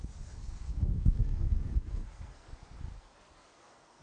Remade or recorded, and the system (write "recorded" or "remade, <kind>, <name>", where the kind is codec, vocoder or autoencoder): remade, codec, SNAC